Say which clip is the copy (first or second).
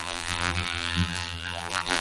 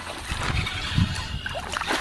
first